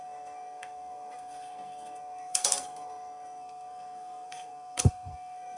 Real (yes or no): no